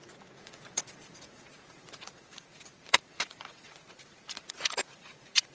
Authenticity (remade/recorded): remade